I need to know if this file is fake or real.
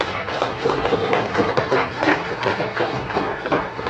fake